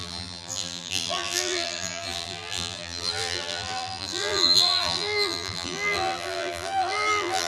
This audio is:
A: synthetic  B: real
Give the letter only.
A